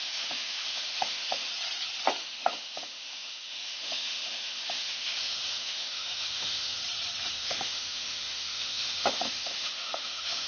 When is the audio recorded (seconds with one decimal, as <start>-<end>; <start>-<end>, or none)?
1.5-2.2; 6.8-7.3